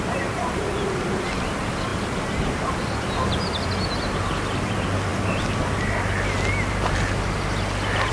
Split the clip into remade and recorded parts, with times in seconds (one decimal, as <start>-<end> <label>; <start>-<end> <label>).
0.0-8.1 recorded